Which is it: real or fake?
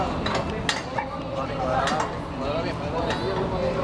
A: real